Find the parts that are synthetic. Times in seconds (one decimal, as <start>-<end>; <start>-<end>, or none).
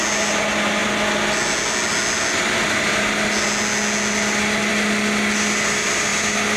none